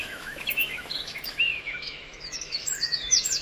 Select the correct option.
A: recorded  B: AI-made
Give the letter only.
B